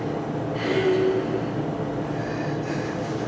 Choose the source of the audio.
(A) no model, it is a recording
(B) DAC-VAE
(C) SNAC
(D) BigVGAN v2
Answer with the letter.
A